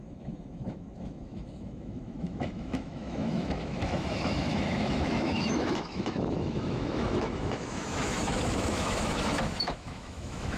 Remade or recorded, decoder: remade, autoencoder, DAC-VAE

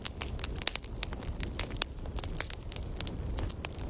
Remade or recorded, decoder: recorded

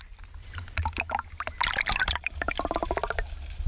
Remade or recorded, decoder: recorded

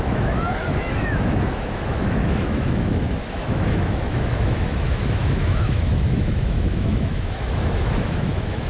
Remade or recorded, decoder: remade, autoencoder, DAC-VAE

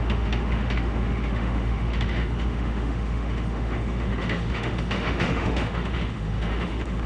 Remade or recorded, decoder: remade, autoencoder, DAC-VAE